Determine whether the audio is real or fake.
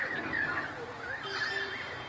real